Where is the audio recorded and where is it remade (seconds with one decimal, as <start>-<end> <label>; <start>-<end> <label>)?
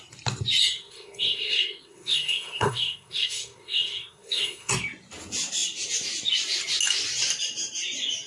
0.0-0.6 recorded; 0.6-4.7 remade; 4.7-8.3 recorded